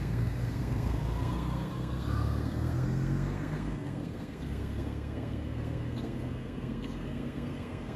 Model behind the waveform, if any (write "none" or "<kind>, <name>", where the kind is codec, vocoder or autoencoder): codec, SNAC